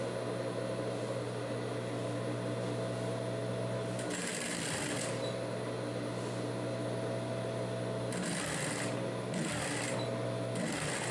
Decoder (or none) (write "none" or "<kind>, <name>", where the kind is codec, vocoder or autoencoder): none